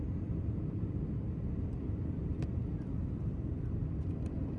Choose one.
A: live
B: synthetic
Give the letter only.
B